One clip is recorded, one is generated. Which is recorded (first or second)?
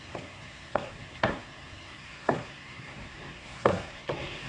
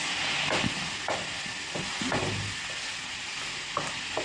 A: second